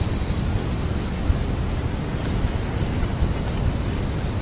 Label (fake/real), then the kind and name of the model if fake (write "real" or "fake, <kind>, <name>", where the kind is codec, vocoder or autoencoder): real